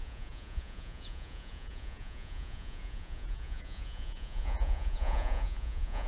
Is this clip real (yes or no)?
no